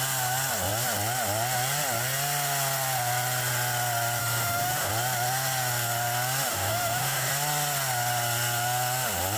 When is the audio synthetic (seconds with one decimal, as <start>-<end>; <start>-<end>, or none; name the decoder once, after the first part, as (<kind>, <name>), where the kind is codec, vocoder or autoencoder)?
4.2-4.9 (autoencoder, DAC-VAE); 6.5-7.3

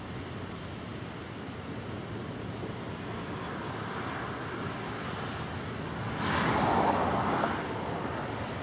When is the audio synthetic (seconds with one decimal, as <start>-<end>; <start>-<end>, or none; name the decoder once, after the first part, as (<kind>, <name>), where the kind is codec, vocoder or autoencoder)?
none

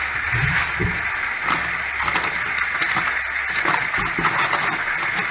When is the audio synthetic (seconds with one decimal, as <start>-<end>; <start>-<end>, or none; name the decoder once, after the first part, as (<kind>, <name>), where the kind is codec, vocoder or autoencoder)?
none